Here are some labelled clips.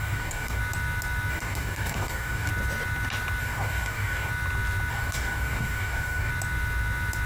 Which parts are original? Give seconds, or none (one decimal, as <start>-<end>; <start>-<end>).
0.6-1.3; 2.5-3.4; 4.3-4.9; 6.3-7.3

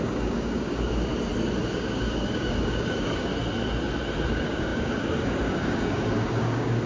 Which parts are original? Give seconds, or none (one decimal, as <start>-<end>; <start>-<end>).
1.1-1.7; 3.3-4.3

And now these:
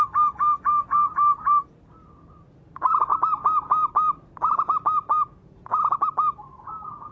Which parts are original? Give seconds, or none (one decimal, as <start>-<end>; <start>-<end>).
0.0-7.1

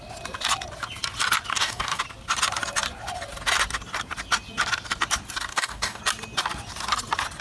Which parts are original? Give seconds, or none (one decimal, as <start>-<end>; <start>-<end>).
0.0-1.5; 2.0-5.5; 6.0-7.4

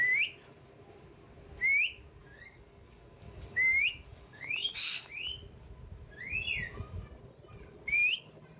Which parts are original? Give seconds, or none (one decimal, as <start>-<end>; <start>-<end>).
0.0-2.2; 5.2-8.6

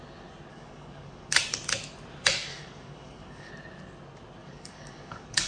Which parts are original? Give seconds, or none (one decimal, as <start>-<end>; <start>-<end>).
0.0-0.5; 1.4-2.5; 3.5-4.4

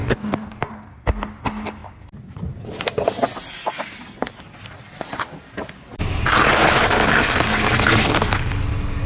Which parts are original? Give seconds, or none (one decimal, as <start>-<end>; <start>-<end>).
0.7-9.1